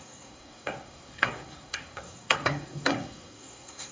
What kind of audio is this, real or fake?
fake